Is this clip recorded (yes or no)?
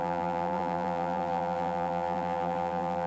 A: no